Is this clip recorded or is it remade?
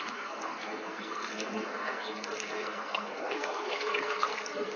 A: remade